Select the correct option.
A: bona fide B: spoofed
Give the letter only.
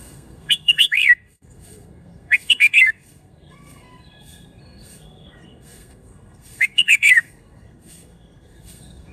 B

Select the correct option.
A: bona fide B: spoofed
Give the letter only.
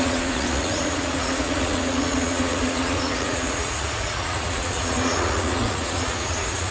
B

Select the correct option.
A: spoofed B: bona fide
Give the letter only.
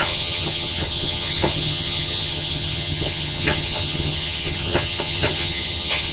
A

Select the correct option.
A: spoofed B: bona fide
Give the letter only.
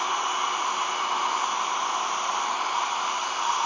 B